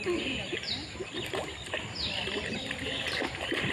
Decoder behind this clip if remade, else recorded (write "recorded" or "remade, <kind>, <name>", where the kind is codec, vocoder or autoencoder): recorded